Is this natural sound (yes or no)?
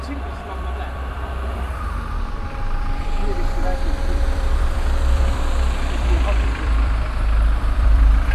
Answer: no